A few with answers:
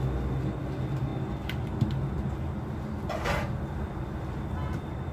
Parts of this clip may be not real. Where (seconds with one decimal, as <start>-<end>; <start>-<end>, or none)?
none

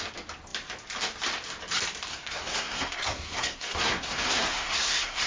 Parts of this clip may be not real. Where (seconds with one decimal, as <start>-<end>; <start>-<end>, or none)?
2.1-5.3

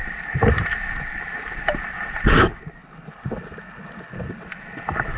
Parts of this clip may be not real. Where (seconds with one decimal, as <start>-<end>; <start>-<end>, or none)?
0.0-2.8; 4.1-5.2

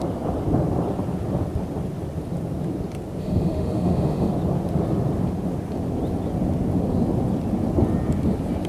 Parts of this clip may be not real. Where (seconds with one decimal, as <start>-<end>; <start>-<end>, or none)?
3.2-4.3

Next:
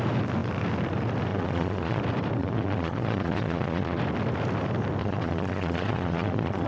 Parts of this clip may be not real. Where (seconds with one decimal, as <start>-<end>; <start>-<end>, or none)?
1.3-2.0; 2.4-4.0; 5.0-6.7